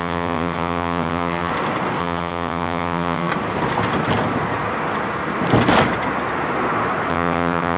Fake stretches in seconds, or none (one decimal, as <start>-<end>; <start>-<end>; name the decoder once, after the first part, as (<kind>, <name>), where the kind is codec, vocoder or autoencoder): 0.0-1.5 (vocoder, HiFi-GAN); 2.0-3.3; 7.1-7.8